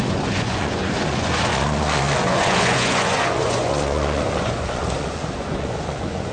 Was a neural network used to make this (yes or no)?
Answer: yes